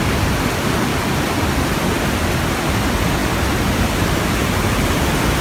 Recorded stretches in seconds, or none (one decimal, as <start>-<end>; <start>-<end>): 0.0-0.9; 1.5-3.2; 3.9-5.4